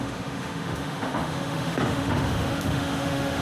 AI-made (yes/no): yes